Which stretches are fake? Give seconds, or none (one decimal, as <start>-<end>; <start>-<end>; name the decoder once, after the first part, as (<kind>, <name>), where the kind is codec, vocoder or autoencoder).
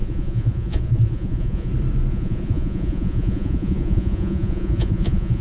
0.0-1.7 (vocoder, Vocos); 2.1-5.4